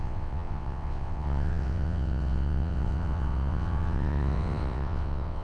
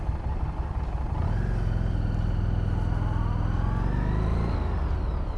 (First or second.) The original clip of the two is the second